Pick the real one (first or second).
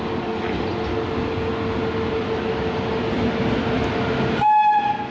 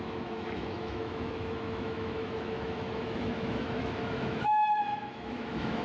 first